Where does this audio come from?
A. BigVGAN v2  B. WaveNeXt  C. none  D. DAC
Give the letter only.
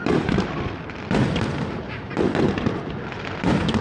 A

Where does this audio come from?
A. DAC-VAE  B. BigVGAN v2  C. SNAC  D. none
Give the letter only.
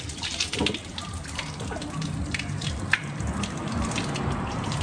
B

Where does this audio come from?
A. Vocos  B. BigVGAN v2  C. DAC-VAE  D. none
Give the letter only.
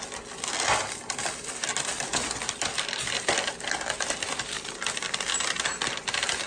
D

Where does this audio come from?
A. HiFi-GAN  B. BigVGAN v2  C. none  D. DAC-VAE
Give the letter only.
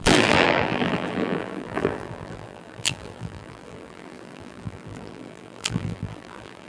B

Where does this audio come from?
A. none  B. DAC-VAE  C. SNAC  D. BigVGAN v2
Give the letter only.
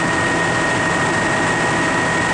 A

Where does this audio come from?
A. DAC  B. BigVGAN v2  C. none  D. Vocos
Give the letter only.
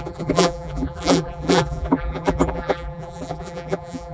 B